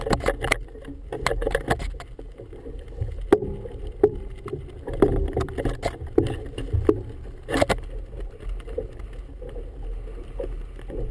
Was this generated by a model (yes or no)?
no